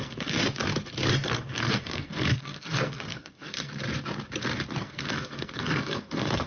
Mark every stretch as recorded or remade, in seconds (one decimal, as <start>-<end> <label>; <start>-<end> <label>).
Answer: 0.0-0.4 remade; 0.4-1.1 recorded; 1.1-3.7 remade; 3.7-4.8 recorded; 4.8-6.5 remade